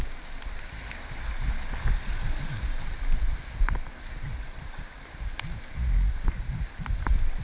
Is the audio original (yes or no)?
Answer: yes